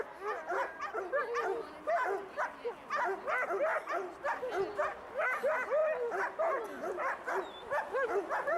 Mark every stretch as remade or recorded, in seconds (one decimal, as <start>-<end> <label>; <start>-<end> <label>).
0.0-8.6 recorded